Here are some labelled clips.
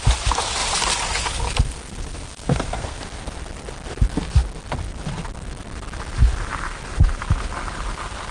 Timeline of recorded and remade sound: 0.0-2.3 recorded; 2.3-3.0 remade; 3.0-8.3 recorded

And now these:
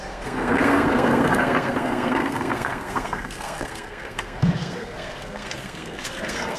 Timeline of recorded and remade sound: 0.0-6.6 remade

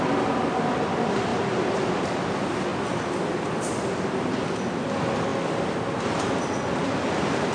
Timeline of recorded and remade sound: 0.0-7.5 recorded

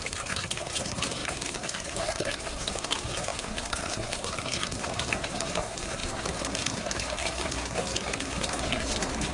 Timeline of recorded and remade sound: 0.0-9.3 remade

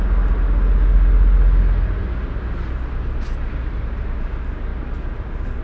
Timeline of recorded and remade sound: 0.0-5.6 recorded